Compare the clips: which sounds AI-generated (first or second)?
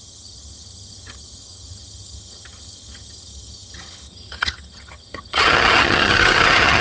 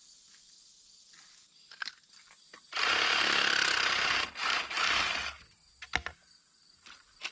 first